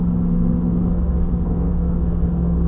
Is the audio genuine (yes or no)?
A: no